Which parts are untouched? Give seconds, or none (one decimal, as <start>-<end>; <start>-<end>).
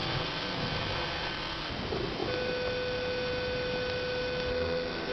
1.7-4.5